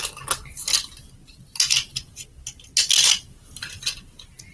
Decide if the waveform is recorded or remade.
recorded